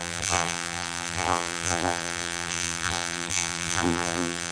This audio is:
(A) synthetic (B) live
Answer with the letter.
A